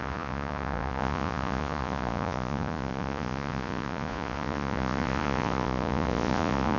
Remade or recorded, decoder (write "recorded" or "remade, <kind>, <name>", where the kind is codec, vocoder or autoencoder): remade, vocoder, Vocos